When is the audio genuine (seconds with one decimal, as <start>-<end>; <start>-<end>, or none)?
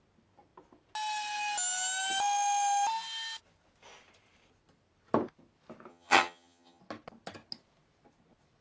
0.0-5.9; 6.8-8.6